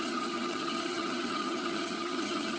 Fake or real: fake